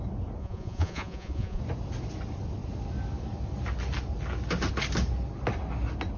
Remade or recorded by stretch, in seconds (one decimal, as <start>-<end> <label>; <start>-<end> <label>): 0.0-0.4 recorded; 0.4-1.6 remade; 1.6-6.2 recorded

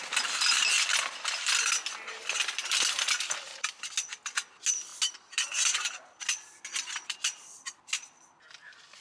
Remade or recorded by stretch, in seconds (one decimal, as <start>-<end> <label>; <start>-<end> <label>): 0.0-9.0 recorded